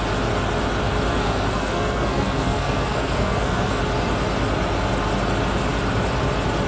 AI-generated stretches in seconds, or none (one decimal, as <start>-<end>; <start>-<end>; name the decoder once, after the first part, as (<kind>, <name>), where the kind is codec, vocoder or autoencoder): 1.1-3.8 (codec, SNAC)